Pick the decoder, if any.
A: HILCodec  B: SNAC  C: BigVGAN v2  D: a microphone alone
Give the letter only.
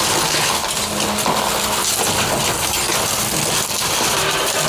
D